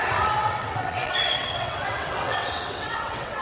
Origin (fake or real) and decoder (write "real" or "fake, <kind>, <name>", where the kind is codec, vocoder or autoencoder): fake, vocoder, WaveNeXt